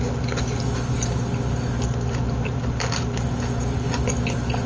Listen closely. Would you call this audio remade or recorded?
recorded